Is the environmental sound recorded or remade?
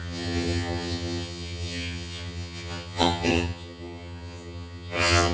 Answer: remade